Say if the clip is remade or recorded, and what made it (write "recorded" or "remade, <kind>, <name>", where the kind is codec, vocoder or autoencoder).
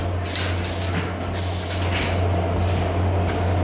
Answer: recorded